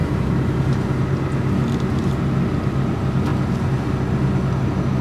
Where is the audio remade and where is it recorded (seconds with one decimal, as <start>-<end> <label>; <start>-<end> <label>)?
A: 0.0-1.0 remade; 1.0-5.0 recorded

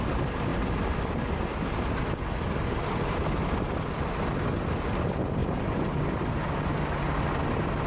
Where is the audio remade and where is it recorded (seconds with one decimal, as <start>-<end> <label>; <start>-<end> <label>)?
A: 0.0-0.5 recorded; 0.5-1.2 remade; 1.2-5.4 recorded; 5.4-6.3 remade; 6.3-7.9 recorded

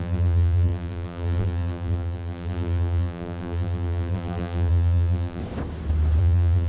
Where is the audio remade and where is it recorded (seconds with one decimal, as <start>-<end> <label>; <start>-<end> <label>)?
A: 0.0-5.4 remade; 5.4-6.2 recorded; 6.2-6.7 remade

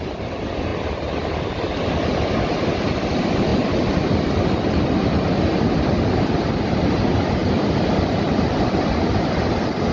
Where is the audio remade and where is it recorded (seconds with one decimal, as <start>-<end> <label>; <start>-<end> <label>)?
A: 0.0-7.4 recorded; 7.4-9.3 remade; 9.3-9.9 recorded

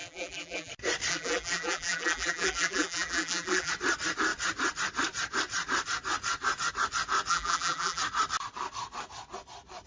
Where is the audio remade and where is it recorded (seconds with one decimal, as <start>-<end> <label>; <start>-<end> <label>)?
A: 0.0-0.7 remade; 0.7-1.1 recorded; 1.1-3.7 remade; 3.7-7.3 recorded; 7.3-8.0 remade; 8.0-9.9 recorded

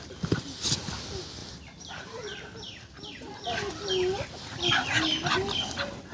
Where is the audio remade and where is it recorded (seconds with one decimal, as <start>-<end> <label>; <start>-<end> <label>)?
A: 0.0-1.4 recorded; 1.4-2.5 remade; 2.5-6.1 recorded

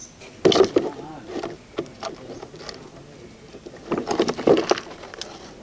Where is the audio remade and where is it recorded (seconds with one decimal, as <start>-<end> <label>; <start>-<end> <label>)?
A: 0.0-4.0 recorded; 4.0-4.6 remade; 4.6-5.6 recorded

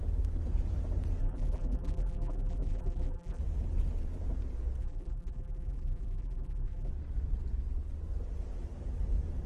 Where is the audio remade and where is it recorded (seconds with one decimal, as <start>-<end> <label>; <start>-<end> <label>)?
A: 0.0-1.2 recorded; 1.2-3.4 remade; 3.4-4.8 recorded; 4.8-6.9 remade; 6.9-9.5 recorded